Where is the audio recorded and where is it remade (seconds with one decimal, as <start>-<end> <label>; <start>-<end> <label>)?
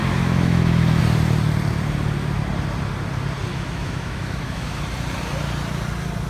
0.0-1.0 remade; 1.0-3.5 recorded; 3.5-4.8 remade; 4.8-6.3 recorded